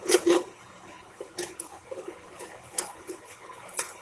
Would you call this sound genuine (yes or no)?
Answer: no